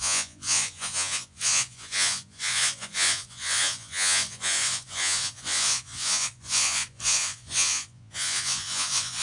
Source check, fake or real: fake